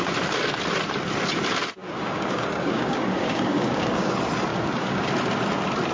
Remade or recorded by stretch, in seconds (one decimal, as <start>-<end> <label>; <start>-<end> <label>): 0.0-1.8 recorded; 1.8-4.1 remade; 4.1-4.5 recorded; 4.5-5.1 remade; 5.1-5.9 recorded